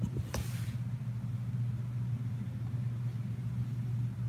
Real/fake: real